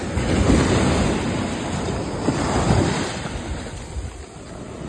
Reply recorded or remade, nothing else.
recorded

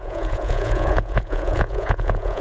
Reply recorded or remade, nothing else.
remade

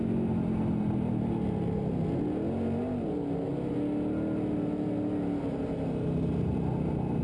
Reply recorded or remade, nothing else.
recorded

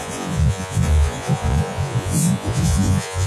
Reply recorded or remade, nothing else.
remade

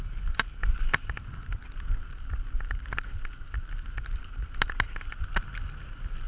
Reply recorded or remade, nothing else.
recorded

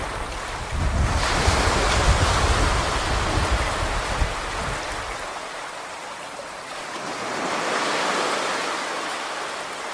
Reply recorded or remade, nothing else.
recorded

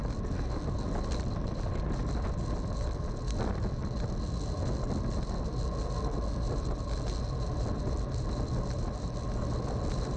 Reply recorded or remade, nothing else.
recorded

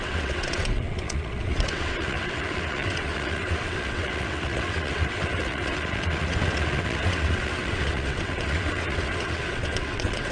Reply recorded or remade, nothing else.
remade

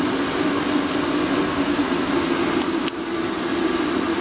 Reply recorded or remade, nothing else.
recorded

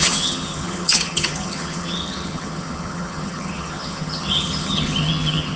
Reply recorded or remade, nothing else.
remade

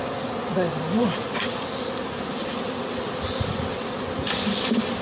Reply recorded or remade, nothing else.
recorded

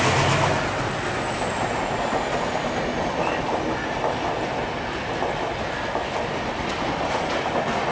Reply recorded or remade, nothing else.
recorded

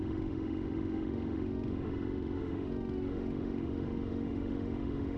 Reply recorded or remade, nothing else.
remade